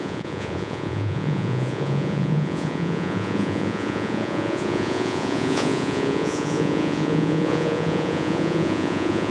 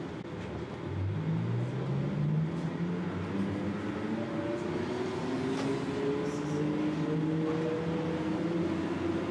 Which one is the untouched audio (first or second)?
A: second